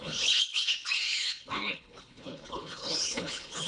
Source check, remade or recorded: remade